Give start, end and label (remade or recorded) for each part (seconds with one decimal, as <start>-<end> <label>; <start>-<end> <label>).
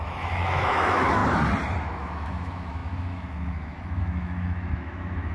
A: 0.0-1.2 remade; 1.2-1.8 recorded; 1.8-5.3 remade